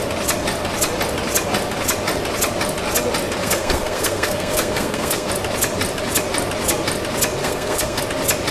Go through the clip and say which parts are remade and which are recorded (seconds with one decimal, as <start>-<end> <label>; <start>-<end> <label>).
0.0-3.4 recorded; 3.4-5.3 remade; 5.3-7.4 recorded; 7.4-8.0 remade; 8.0-8.5 recorded